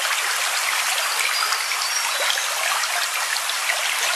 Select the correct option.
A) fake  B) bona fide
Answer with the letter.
B